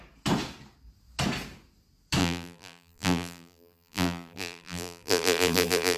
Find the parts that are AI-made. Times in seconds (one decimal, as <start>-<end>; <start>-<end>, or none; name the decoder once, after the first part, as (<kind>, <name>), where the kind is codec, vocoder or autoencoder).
2.2-6.0 (vocoder, BigVGAN v2)